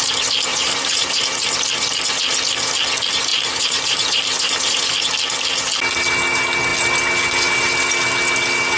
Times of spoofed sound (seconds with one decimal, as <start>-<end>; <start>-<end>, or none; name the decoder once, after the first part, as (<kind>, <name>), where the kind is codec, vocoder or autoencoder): 0.5-1.2 (vocoder, BigVGAN v2); 3.3-4.9

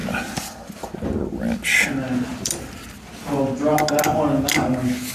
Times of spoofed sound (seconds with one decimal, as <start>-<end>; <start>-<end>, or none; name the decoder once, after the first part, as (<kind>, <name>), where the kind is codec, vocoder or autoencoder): 2.3-3.1 (vocoder, BigVGAN v2)

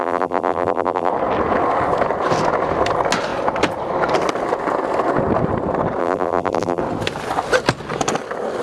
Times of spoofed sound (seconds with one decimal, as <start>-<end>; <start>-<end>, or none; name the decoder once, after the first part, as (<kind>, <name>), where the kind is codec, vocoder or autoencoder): 0.0-1.1 (vocoder, BigVGAN v2); 6.0-6.8

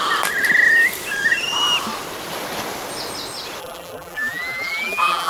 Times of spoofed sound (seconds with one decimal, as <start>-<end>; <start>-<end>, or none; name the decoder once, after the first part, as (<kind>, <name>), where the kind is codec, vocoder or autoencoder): 3.6-5.3 (vocoder, BigVGAN v2)

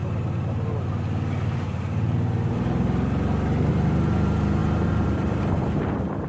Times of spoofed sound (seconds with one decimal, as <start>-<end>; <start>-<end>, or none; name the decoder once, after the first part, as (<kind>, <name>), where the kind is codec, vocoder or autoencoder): 3.7-6.3 (vocoder, BigVGAN v2)

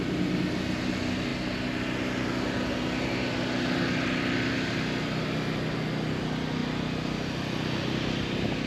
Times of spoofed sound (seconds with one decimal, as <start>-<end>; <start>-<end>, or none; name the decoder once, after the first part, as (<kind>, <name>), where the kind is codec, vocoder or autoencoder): none